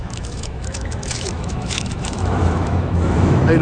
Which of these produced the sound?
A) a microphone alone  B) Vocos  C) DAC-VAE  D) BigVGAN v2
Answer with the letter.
C